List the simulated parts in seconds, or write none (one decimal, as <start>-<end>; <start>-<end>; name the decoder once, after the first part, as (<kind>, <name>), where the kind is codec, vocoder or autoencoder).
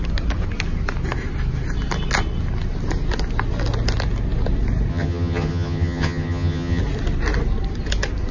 4.9-6.8 (vocoder, HiFi-GAN)